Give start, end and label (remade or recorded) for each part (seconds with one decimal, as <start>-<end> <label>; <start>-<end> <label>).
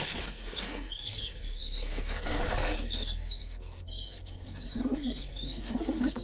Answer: 0.0-6.2 remade